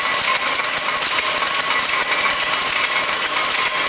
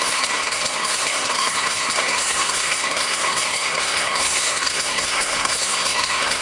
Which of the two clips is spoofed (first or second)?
second